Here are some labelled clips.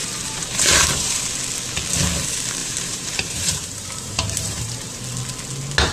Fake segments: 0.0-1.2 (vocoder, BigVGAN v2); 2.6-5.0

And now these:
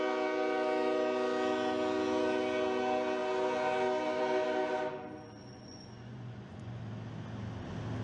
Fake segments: 5.4-6.8 (vocoder, Vocos)

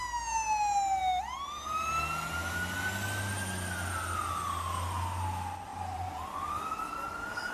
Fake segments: 5.7-6.3 (vocoder, BigVGAN v2)